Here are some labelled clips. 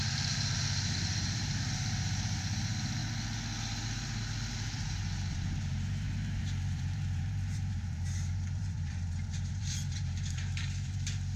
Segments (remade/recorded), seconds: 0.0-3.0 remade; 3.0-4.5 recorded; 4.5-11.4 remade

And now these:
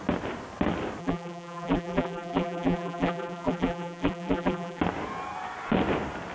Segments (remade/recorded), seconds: 0.0-1.0 recorded; 1.0-4.8 remade; 4.8-6.3 recorded